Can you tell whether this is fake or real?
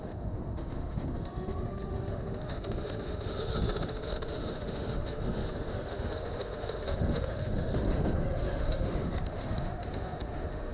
fake